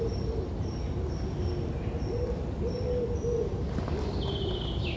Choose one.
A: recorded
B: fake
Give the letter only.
A